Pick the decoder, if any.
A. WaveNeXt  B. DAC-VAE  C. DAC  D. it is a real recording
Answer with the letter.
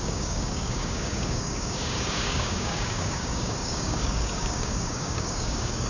C